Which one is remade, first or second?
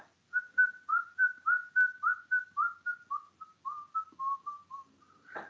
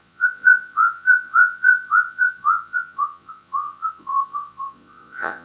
second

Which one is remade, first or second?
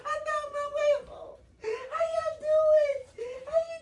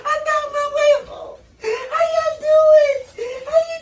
first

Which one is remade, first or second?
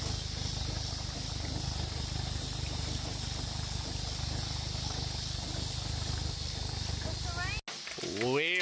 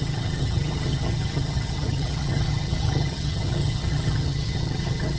second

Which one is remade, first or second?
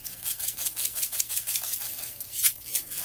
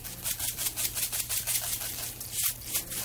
first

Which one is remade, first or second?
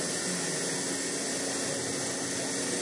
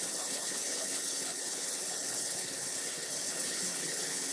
second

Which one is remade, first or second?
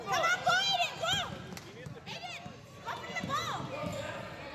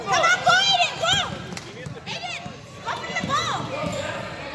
second